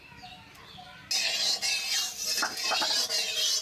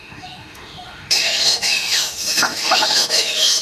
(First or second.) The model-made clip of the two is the second